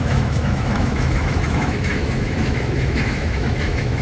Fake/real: fake